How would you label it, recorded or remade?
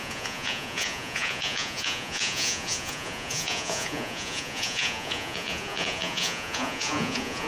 remade